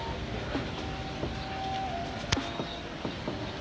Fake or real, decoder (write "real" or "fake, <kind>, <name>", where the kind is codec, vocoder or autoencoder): real